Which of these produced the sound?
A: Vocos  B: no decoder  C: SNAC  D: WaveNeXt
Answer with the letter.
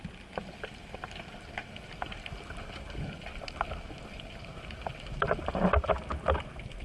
B